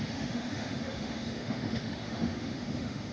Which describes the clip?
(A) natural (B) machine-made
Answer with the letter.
B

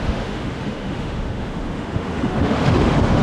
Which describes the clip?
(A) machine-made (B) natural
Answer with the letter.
A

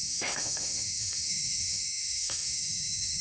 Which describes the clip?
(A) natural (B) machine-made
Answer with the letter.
B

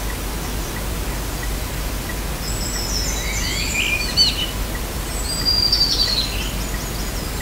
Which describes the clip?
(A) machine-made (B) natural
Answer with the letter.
B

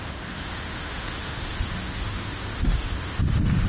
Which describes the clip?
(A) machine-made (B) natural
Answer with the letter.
A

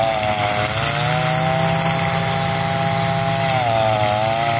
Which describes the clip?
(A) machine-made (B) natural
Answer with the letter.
B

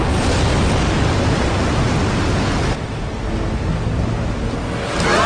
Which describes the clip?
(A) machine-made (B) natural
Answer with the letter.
B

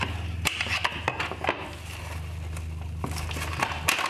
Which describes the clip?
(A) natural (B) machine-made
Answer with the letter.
A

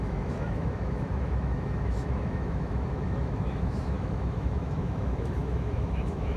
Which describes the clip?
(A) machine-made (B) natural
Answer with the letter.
A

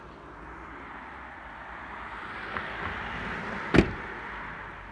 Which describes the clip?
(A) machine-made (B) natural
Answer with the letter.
B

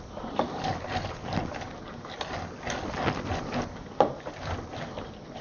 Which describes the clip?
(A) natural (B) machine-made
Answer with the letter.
A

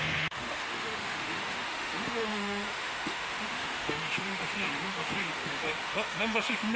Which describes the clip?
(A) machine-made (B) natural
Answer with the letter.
A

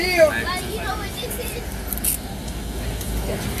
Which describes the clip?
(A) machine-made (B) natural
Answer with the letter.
B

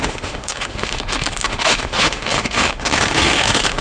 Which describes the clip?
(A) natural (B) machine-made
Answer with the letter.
B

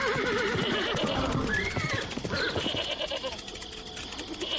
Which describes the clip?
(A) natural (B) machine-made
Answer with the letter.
A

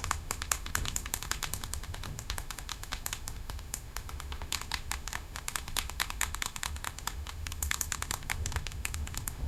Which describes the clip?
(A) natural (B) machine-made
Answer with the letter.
B